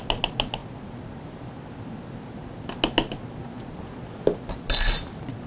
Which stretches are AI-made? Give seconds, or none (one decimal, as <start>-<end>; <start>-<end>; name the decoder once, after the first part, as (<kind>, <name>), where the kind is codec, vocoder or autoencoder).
none